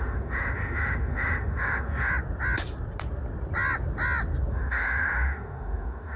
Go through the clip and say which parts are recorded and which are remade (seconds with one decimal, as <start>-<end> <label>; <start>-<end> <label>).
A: 0.0-2.1 remade; 2.1-4.5 recorded; 4.5-6.2 remade